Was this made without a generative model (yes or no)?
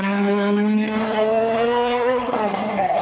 no